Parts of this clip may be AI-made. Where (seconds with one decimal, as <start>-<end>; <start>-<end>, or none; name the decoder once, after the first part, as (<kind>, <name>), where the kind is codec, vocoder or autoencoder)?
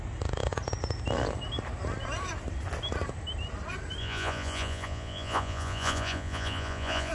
4.0-7.1 (vocoder, Vocos)